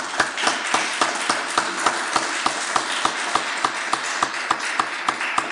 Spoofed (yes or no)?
no